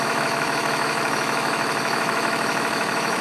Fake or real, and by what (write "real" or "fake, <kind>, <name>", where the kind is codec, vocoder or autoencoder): fake, autoencoder, DAC-VAE